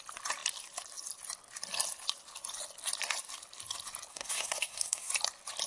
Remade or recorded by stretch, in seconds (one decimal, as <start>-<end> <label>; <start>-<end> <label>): 0.0-4.1 recorded; 4.1-5.1 remade; 5.1-5.7 recorded